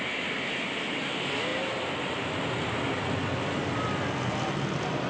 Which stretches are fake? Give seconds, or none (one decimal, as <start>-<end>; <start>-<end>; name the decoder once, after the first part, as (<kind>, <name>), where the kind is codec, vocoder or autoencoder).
none